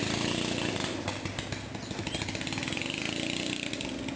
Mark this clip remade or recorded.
recorded